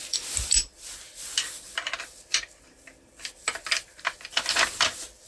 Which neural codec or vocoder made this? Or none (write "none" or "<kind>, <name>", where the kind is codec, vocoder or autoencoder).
vocoder, BigVGAN v2